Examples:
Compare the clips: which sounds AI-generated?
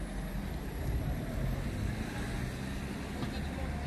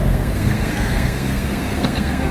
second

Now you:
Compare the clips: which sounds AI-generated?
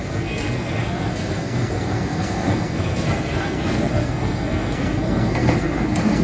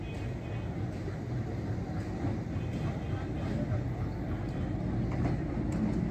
first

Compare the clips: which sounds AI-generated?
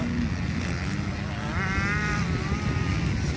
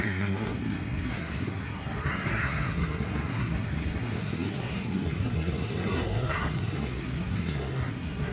second